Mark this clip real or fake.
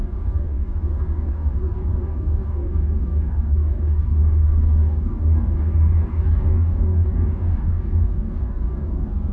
fake